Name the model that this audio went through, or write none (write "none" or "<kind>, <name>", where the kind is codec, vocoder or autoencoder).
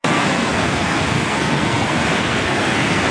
codec, SNAC